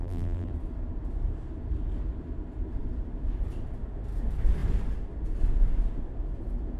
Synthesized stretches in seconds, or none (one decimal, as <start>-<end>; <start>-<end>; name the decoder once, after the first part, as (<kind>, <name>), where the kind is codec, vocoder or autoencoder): 0.0-0.5 (vocoder, BigVGAN v2)